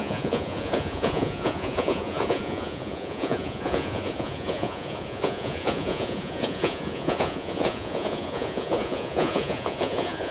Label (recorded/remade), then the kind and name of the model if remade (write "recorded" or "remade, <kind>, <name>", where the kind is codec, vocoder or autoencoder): remade, vocoder, Vocos